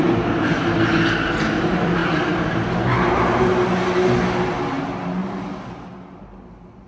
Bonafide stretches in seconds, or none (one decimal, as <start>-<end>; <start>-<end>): 0.0-6.9